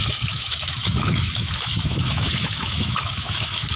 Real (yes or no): no